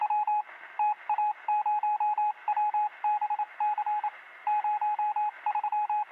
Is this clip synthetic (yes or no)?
no